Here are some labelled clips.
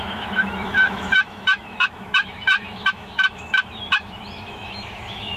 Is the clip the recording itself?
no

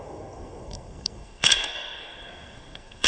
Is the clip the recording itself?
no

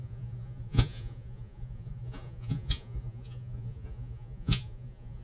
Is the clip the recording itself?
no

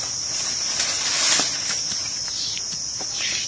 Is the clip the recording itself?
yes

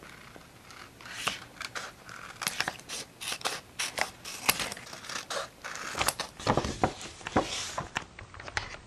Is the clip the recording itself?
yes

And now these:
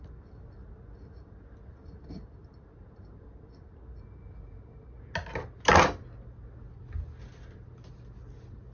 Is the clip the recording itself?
yes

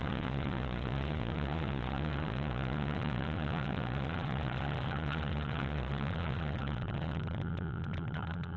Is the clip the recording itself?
no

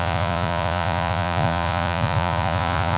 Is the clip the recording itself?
no